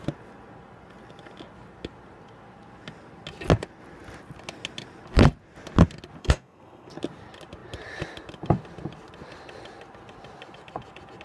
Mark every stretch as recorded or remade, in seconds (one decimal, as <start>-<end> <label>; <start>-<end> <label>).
0.0-6.2 recorded; 6.2-6.9 remade; 6.9-11.2 recorded